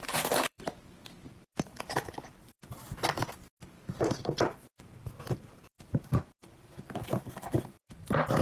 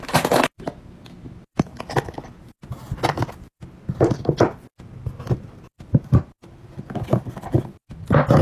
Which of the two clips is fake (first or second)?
first